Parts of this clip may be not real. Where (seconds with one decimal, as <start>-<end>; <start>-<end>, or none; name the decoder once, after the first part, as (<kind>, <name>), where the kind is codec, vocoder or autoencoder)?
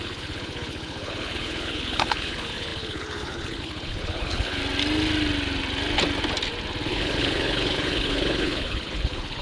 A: 0.0-4.6 (codec, HILCodec); 6.9-9.4